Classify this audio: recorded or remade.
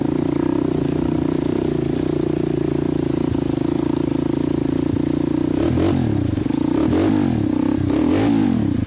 recorded